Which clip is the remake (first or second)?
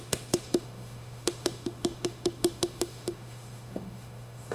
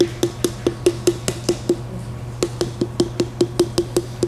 first